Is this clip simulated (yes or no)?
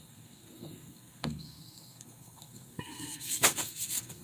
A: yes